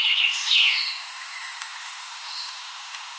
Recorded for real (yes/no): no